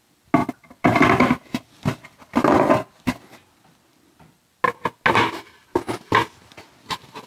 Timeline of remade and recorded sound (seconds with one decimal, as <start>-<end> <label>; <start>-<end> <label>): 0.0-7.3 recorded